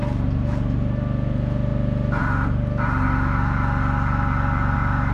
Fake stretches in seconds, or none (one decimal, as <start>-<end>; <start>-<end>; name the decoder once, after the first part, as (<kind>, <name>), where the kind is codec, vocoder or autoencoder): none